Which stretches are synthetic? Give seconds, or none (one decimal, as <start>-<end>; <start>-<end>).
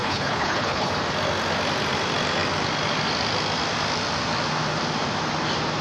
0.0-0.9